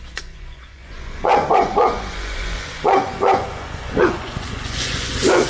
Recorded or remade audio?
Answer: remade